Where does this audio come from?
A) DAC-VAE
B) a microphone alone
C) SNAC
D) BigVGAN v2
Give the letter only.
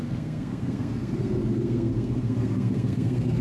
C